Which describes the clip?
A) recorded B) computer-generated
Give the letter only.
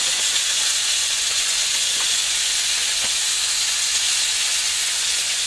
B